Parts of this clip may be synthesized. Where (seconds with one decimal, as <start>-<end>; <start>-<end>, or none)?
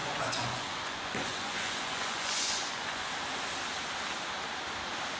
0.0-3.1